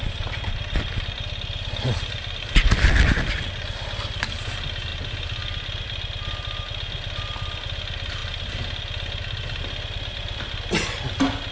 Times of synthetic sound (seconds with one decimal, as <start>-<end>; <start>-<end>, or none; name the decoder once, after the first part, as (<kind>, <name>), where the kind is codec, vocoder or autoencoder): none